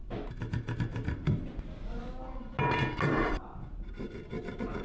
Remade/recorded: recorded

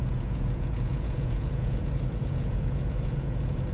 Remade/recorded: remade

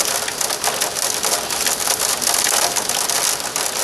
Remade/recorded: recorded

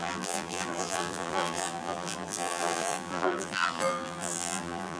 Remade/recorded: remade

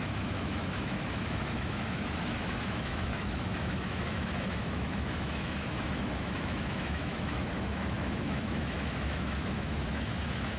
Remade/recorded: remade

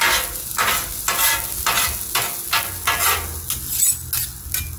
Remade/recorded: recorded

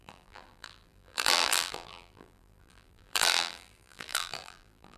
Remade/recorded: remade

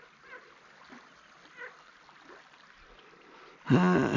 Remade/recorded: recorded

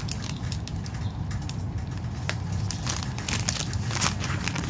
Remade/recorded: recorded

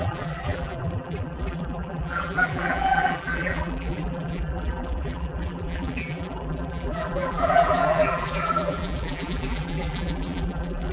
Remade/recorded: remade